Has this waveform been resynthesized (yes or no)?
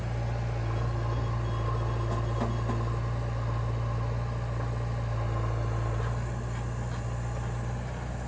no